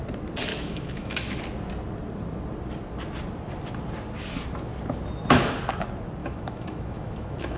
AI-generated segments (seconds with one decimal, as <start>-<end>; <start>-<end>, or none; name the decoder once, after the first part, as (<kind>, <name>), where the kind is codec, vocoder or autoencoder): 0.5-1.4 (autoencoder, DAC-VAE); 6.2-7.6